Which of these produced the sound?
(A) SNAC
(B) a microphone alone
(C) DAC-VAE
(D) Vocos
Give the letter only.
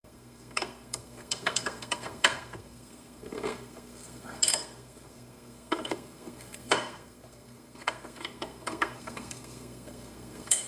A